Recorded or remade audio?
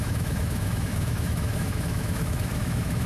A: remade